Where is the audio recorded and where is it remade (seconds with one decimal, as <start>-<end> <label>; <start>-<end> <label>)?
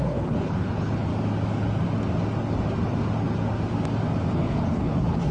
0.0-1.1 remade; 1.1-4.3 recorded; 4.3-5.3 remade